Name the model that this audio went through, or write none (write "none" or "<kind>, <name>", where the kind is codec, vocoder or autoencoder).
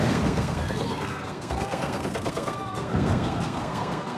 codec, SNAC